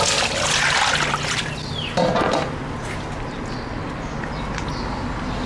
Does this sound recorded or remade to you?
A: recorded